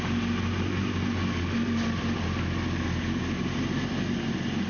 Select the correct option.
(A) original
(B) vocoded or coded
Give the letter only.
A